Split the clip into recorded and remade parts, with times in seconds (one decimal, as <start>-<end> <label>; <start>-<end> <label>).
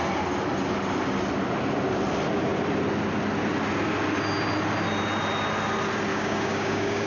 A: 0.0-6.1 recorded; 6.1-7.1 remade